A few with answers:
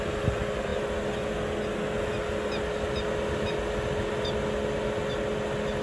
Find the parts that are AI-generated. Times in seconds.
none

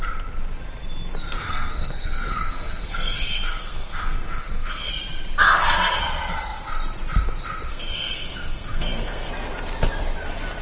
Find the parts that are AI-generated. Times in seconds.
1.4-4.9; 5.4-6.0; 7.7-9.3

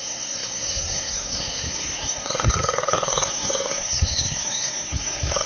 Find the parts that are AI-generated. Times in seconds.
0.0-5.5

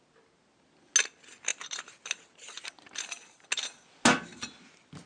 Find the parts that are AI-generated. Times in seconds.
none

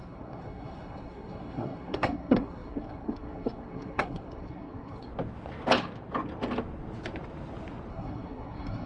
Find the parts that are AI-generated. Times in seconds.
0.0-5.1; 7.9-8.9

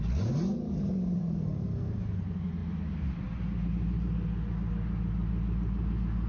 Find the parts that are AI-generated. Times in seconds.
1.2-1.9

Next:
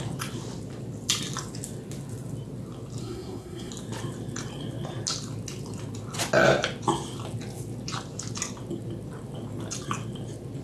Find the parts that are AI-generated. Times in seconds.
3.0-3.7